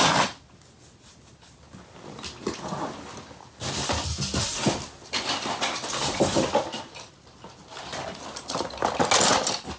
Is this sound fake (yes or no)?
no